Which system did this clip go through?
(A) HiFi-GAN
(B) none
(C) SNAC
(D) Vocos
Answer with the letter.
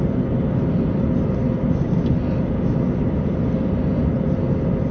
B